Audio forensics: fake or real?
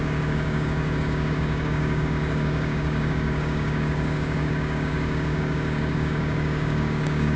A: fake